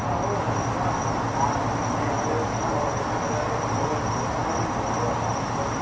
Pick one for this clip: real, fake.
real